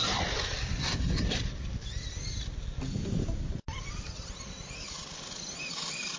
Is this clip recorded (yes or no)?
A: yes